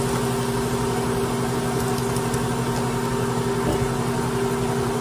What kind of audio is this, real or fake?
real